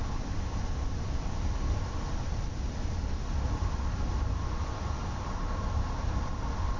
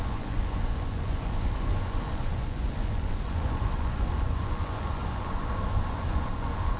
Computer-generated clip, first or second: second